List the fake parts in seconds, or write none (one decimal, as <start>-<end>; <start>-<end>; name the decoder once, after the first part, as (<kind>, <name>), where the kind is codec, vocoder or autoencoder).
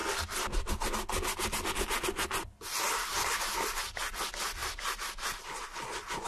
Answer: none